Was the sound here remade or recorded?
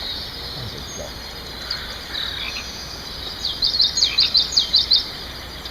remade